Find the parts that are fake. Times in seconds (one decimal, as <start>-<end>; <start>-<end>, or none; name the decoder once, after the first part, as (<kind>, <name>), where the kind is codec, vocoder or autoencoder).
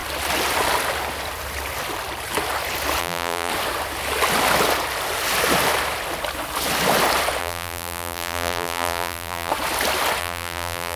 3.0-3.5 (vocoder, BigVGAN v2); 7.4-9.5; 10.2-11.0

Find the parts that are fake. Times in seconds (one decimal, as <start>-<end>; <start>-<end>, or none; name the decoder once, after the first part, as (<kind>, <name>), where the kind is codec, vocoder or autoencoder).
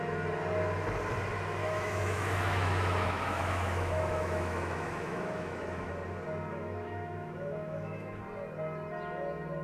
1.6-5.9 (autoencoder, DAC-VAE); 6.5-8.2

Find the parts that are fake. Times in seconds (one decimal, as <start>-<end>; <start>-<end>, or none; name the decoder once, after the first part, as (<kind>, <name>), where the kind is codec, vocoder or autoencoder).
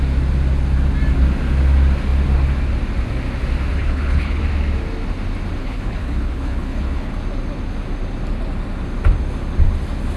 3.7-4.4 (codec, HILCodec); 5.6-7.1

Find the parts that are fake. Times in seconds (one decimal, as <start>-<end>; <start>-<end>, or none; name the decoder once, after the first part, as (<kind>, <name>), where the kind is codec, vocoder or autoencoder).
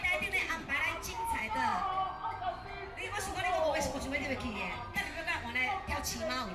none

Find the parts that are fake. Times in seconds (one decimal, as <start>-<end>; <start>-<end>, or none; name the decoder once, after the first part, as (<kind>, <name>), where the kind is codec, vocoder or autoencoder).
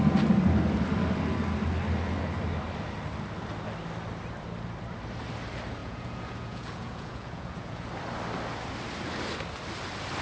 5.8-7.9 (vocoder, Vocos)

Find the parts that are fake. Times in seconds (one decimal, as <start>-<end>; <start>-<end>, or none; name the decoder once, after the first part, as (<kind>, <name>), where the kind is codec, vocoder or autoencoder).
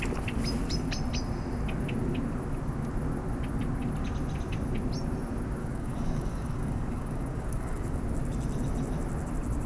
5.6-8.0 (codec, DAC)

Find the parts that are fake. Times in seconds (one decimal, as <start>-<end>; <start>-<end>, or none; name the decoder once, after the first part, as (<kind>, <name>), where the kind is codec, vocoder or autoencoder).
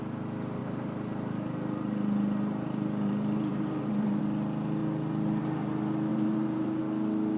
0.6-4.2 (vocoder, BigVGAN v2); 6.1-6.8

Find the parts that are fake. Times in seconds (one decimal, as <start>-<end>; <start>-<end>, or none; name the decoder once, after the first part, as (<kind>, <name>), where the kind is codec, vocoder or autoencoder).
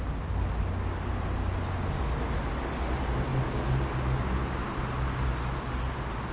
none